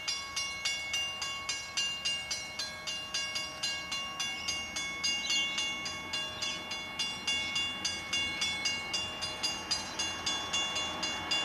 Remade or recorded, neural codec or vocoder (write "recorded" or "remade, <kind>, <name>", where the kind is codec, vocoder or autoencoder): recorded